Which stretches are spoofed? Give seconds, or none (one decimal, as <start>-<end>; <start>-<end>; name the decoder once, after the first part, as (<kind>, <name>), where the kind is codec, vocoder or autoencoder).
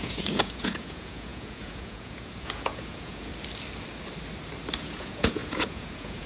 0.0-3.3 (vocoder, Vocos); 4.8-6.3